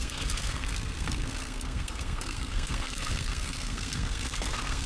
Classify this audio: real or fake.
fake